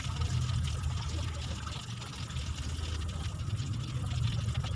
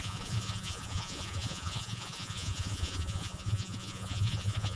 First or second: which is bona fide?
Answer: first